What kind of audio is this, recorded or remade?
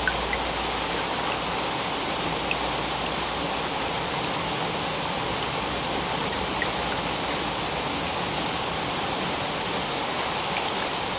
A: recorded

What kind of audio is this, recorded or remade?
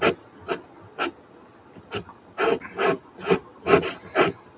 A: remade